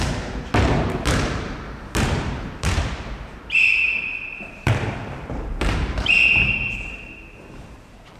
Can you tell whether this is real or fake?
fake